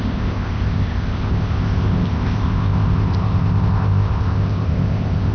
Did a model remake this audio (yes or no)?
yes